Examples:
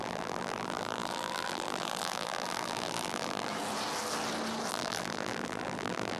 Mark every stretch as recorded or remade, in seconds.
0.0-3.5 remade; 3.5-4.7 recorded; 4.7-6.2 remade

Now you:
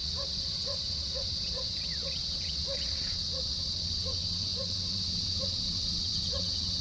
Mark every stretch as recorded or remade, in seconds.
0.0-6.8 remade

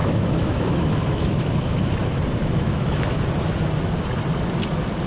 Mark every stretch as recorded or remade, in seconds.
0.0-1.9 remade; 1.9-2.4 recorded; 2.4-3.2 remade; 3.2-5.1 recorded

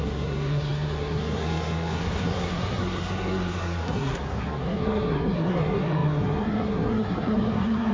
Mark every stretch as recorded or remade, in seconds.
0.0-7.9 remade

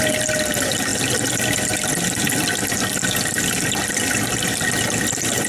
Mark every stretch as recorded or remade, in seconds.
0.0-5.5 recorded